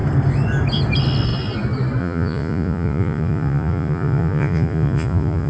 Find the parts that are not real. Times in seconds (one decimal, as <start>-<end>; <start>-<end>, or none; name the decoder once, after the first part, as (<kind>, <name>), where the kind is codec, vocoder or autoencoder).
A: 2.0-5.5 (vocoder, Vocos)